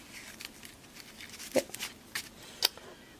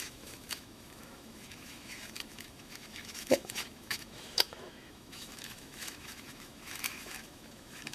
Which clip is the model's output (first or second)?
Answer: second